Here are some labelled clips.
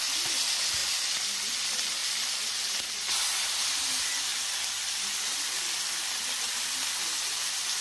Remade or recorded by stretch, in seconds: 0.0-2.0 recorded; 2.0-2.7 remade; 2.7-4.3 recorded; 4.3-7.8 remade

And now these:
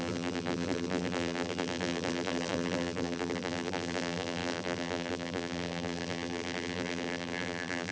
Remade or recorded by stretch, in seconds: 0.0-7.9 remade